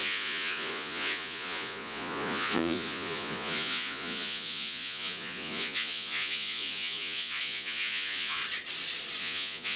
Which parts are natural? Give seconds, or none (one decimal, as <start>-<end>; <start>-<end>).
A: 8.4-9.2